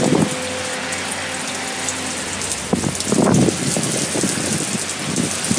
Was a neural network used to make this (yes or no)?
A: no